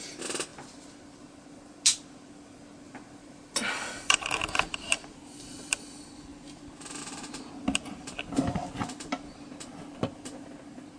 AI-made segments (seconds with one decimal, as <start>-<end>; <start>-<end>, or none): none